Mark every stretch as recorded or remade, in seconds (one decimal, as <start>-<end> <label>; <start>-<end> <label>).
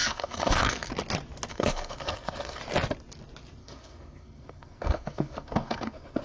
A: 0.0-0.9 remade; 0.9-1.5 recorded; 1.5-2.6 remade; 2.6-3.6 recorded; 3.6-6.2 remade